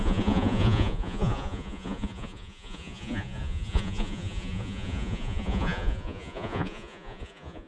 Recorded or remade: remade